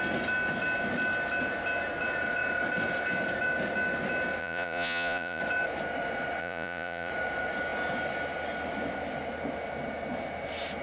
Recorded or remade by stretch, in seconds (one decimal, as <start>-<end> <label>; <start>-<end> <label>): 0.0-4.4 recorded; 4.4-5.4 remade; 5.4-6.4 recorded; 6.4-7.1 remade; 7.1-10.8 recorded